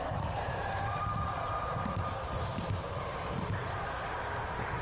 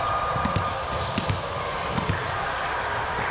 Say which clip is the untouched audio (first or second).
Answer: second